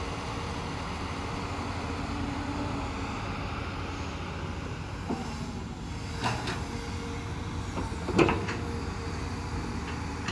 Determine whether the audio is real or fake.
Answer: real